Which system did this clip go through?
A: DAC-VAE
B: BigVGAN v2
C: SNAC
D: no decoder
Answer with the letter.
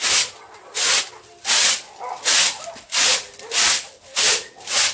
D